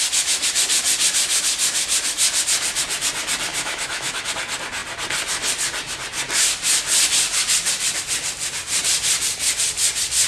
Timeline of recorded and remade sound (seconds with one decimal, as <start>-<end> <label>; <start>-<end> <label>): 0.0-3.5 recorded; 3.5-4.2 remade; 4.2-10.3 recorded